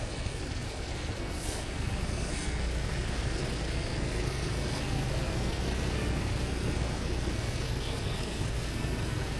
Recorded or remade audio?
remade